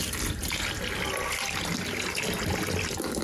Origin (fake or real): real